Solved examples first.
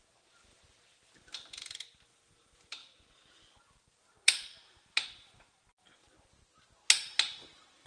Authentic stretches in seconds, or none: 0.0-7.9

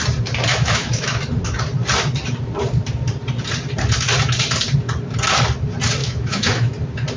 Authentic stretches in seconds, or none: 0.0-0.5; 1.2-6.0; 6.7-7.2

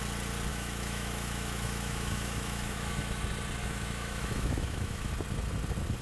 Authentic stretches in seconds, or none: 0.0-0.5; 3.2-3.6; 5.1-6.0

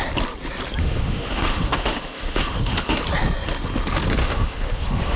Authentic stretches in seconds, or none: 0.0-0.8; 3.0-4.2